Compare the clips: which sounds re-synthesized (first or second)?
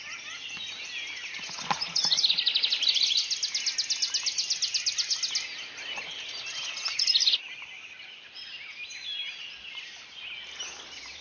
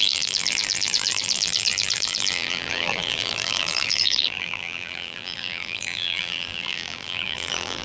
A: second